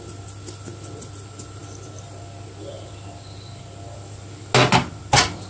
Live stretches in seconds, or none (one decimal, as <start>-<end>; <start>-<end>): 0.0-5.5